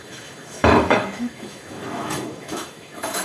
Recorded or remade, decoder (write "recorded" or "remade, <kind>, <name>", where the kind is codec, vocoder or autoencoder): remade, autoencoder, DAC-VAE